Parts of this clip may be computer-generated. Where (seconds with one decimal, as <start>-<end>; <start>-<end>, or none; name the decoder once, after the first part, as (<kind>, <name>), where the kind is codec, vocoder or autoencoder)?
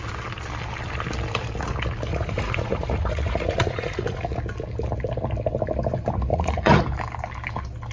2.1-4.2 (vocoder, Vocos); 6.3-6.8